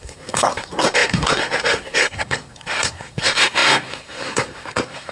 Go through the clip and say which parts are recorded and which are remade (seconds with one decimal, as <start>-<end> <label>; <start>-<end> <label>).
0.0-5.1 remade